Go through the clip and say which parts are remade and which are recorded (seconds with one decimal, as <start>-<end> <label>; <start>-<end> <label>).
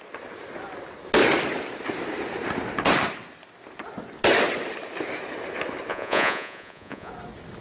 0.0-5.9 recorded; 5.9-7.1 remade; 7.1-7.6 recorded